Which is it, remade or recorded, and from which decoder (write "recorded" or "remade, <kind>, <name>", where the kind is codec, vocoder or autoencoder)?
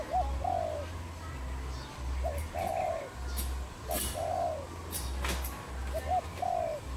recorded